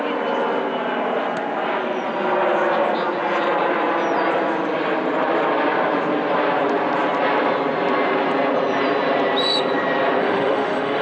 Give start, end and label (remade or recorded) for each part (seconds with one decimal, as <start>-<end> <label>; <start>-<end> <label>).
0.0-10.2 recorded; 10.2-11.0 remade